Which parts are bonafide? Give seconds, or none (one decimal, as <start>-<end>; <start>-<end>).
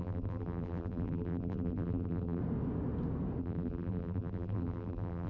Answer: 2.4-3.4